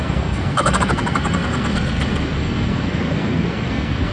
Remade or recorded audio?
remade